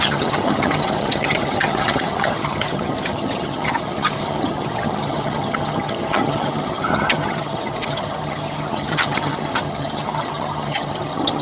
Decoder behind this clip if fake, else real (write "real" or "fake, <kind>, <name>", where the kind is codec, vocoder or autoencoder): fake, vocoder, HiFi-GAN